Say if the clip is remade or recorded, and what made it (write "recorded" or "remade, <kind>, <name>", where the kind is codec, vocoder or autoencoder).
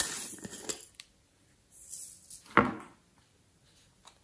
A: recorded